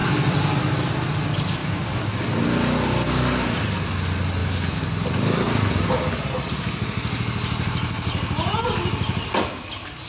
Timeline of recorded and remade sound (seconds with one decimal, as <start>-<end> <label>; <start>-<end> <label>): 0.0-1.6 recorded; 1.6-2.1 remade; 2.1-10.1 recorded